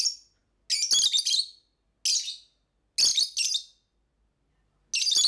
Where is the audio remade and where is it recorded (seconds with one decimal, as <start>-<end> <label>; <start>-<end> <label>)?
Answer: 0.0-5.3 recorded